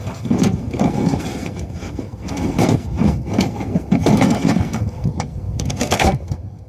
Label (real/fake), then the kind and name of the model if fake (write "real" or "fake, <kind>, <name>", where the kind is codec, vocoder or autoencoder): fake, codec, SNAC